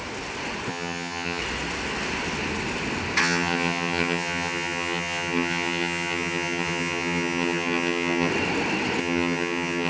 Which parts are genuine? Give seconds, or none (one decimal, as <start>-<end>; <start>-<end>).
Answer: 0.0-0.7; 1.4-3.2; 8.3-9.0